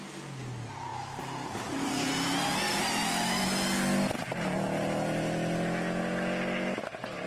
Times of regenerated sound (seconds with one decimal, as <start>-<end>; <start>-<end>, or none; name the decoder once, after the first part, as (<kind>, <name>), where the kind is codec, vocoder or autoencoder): none